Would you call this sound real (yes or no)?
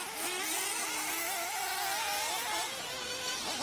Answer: yes